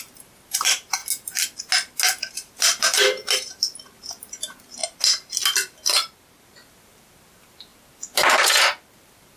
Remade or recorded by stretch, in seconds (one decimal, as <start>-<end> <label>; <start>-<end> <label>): 0.0-1.0 remade; 1.0-2.3 recorded; 2.3-4.8 remade; 4.8-6.4 recorded; 6.4-9.4 remade